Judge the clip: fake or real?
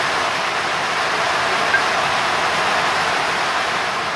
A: real